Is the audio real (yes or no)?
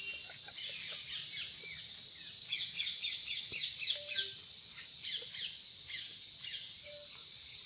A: yes